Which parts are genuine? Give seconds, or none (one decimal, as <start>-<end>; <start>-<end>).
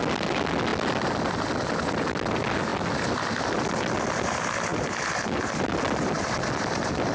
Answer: 0.0-4.7; 5.6-7.1